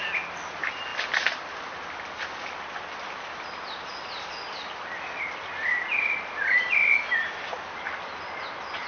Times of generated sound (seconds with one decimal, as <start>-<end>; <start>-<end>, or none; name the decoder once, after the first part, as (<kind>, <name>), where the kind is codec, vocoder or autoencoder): none